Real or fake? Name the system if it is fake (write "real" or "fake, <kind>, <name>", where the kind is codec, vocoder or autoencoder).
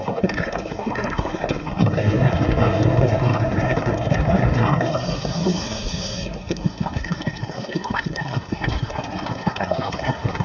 fake, codec, SNAC